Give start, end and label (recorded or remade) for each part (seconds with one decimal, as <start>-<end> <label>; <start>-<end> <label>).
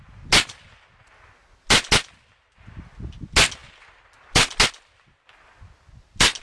0.0-6.4 recorded